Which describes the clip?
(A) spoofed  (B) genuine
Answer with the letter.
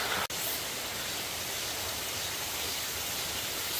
B